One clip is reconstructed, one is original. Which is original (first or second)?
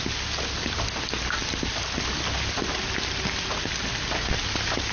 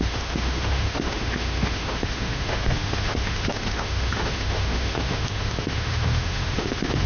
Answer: first